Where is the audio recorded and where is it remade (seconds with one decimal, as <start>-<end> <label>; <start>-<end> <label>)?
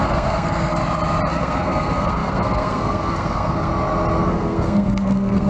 0.0-0.7 remade; 0.7-1.3 recorded; 1.3-3.7 remade; 3.7-4.2 recorded; 4.2-5.5 remade